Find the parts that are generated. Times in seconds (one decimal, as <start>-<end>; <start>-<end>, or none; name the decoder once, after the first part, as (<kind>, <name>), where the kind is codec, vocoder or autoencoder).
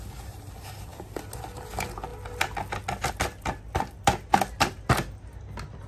none